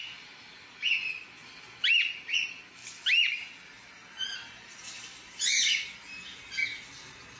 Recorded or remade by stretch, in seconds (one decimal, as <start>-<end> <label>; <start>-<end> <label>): 0.0-7.4 recorded